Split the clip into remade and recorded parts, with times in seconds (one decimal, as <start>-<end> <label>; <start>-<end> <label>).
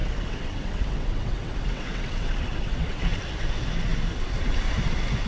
0.0-3.2 remade; 3.2-5.3 recorded